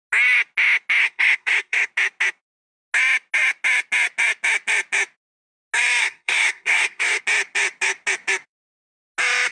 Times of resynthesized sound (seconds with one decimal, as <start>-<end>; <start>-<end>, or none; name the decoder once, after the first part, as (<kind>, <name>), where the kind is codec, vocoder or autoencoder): 1.0-1.9 (codec, SNAC); 6.0-7.2